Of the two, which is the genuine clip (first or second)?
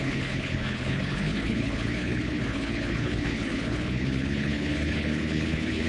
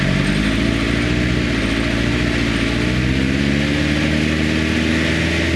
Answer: second